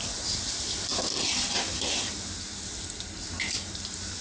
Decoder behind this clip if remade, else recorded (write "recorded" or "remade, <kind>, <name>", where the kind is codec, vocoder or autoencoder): recorded